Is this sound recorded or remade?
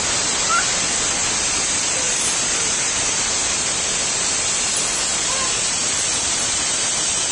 recorded